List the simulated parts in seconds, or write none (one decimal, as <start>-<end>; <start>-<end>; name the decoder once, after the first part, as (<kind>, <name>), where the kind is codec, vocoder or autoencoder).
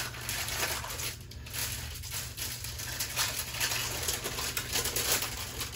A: none